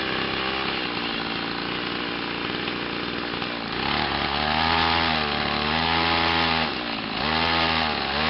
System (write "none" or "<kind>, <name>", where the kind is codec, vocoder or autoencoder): none